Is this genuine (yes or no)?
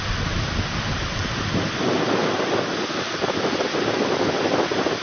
yes